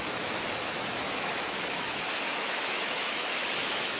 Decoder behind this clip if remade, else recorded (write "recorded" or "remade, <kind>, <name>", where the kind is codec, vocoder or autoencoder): remade, autoencoder, DAC-VAE